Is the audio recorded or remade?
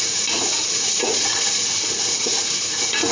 remade